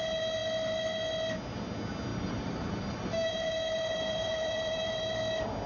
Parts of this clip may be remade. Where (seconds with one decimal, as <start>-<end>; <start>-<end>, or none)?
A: 2.1-5.0